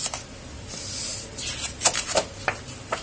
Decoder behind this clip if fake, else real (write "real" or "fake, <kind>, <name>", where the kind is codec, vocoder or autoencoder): real